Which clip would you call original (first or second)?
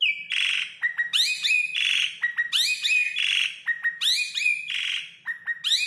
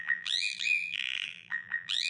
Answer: first